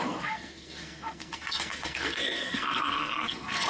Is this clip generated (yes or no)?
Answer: yes